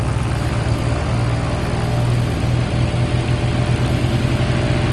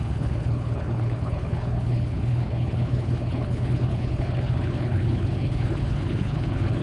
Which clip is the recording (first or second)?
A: first